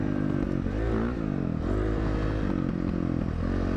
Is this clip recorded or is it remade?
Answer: recorded